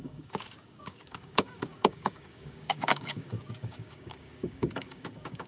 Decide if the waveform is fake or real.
fake